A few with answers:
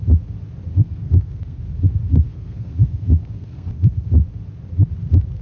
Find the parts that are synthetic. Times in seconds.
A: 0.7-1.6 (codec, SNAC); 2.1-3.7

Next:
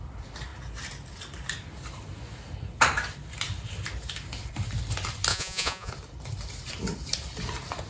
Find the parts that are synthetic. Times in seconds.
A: 5.3-5.9 (vocoder, Vocos)